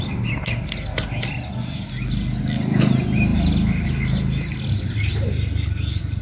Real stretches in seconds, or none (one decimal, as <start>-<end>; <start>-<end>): 0.0-6.2